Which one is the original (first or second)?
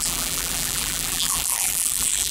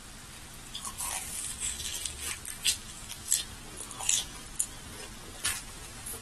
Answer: second